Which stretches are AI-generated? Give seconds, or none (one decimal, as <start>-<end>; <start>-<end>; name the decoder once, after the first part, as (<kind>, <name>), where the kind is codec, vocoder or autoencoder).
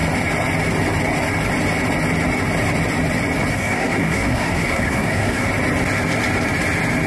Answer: 3.5-5.5 (codec, SNAC)